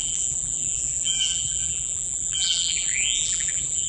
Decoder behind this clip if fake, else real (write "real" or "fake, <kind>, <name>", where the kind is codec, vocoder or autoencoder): fake, vocoder, BigVGAN v2